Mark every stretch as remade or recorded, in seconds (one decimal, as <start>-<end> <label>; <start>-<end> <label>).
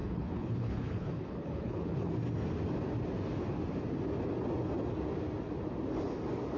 0.0-2.1 remade; 2.1-6.6 recorded